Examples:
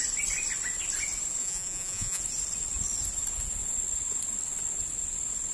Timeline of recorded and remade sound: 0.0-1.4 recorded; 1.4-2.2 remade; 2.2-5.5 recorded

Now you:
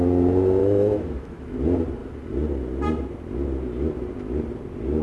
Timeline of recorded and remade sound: 0.0-0.6 recorded; 0.6-1.4 remade; 1.4-5.0 recorded